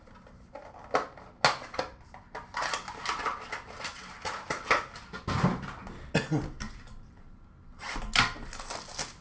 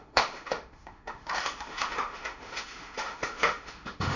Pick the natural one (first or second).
first